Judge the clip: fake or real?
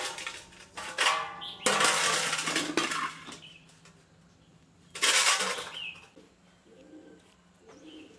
real